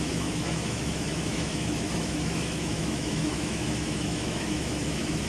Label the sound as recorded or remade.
remade